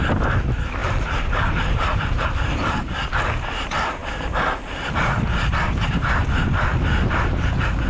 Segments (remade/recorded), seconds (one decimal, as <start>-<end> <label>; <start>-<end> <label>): 0.0-0.8 recorded; 0.8-2.9 remade; 2.9-7.9 recorded